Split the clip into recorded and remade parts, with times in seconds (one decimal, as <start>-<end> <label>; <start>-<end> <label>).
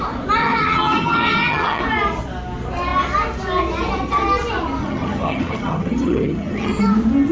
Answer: 0.0-0.4 recorded; 0.4-1.8 remade; 1.8-4.8 recorded; 4.8-6.8 remade; 6.8-7.3 recorded